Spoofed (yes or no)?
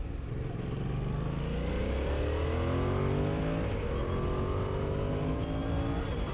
no